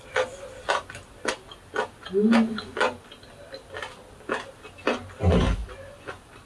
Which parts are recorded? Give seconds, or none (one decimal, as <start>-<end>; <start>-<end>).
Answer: 0.0-6.5